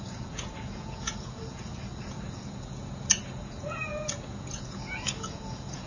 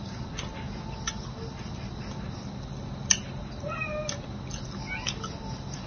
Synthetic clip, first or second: first